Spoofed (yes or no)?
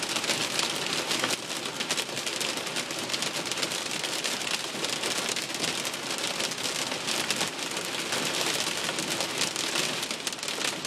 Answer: no